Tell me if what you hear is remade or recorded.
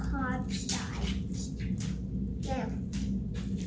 recorded